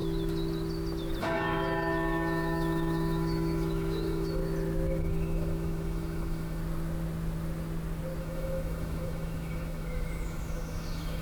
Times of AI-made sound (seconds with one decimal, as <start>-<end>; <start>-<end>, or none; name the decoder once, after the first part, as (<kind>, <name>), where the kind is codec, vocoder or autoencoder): 1.2-4.4 (autoencoder, DAC-VAE); 5.0-6.6; 8.2-11.2